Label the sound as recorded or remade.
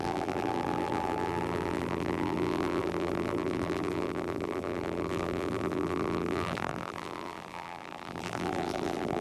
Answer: remade